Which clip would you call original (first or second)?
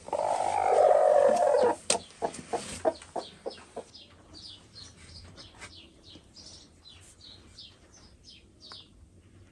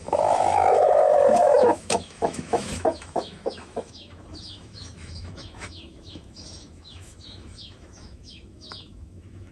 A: first